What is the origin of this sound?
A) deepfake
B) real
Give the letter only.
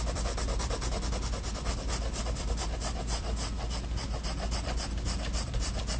B